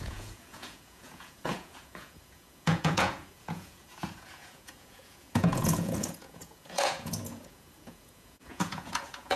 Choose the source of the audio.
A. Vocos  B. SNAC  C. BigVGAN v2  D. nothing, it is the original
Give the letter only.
A